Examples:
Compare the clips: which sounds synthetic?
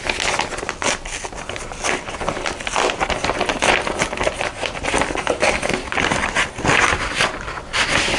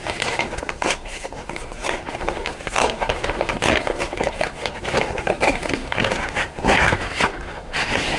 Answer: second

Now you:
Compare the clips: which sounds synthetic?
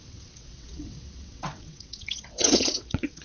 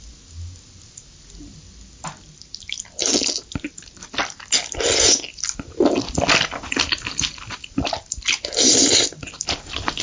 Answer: first